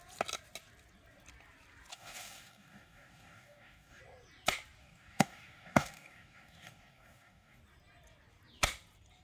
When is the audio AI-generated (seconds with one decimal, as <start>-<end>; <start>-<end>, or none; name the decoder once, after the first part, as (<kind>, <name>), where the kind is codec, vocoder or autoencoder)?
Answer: 1.9-4.0 (codec, DAC); 4.8-7.6